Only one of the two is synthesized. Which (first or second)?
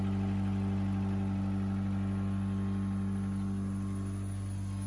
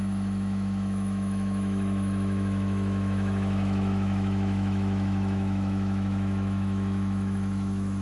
second